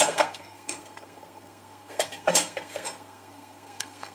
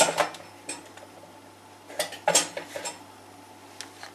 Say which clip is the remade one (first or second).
first